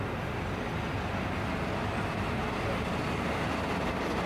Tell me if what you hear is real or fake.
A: fake